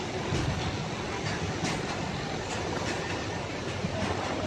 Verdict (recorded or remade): recorded